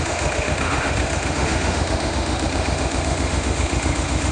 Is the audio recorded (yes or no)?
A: no